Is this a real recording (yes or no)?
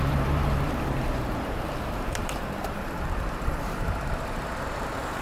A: no